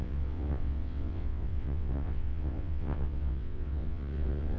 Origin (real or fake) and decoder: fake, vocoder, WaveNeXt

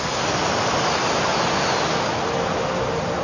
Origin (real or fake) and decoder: real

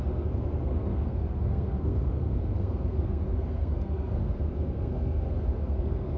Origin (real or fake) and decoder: fake, codec, SNAC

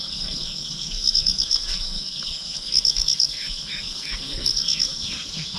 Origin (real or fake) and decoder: fake, codec, SNAC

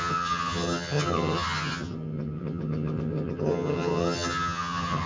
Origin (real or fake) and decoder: fake, vocoder, HiFi-GAN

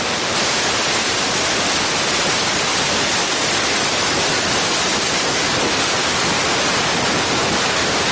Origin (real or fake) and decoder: fake, vocoder, BigVGAN v2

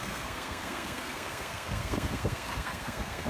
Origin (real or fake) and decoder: fake, codec, SNAC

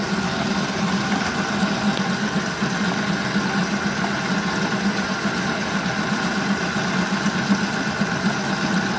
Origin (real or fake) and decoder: real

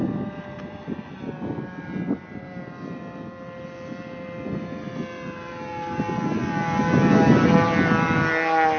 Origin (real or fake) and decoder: real